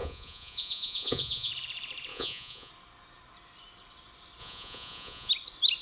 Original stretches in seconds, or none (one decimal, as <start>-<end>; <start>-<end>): 1.5-2.1; 2.7-4.4; 5.3-5.8

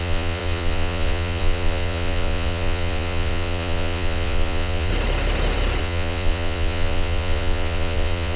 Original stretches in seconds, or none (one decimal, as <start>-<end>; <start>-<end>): 4.9-5.8

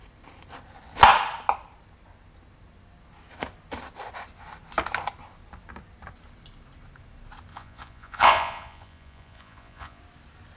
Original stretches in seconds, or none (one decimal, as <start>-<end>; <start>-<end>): 0.0-7.5; 10.0-10.6

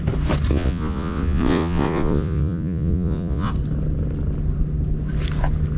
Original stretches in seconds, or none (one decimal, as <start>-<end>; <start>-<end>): 0.0-0.5; 3.5-5.8

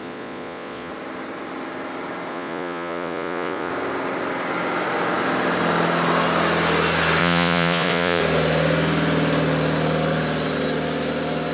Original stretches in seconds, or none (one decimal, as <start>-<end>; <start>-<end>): 0.9-2.3; 3.7-7.2; 8.2-11.5

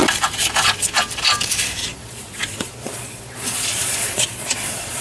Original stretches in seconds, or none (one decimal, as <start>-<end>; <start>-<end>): 0.0-1.8

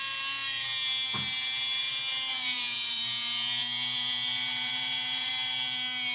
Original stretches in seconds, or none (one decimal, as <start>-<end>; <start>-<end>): 0.0-2.3; 5.3-6.1

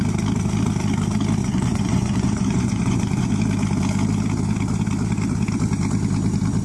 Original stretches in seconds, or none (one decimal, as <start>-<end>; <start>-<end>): 0.0-1.4; 3.3-6.6